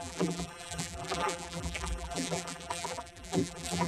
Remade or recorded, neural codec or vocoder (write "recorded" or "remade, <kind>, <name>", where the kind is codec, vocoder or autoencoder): remade, vocoder, BigVGAN v2